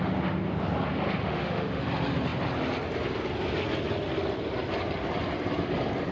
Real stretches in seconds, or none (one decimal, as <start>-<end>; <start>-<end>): 0.0-1.2; 1.8-6.1